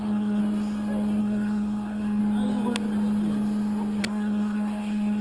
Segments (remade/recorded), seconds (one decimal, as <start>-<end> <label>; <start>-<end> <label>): 0.0-0.4 remade; 0.4-1.2 recorded; 1.2-2.2 remade; 2.2-4.0 recorded; 4.0-5.2 remade